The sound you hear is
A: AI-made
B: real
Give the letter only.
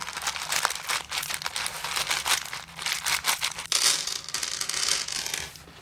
B